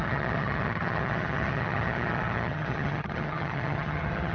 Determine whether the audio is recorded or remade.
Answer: remade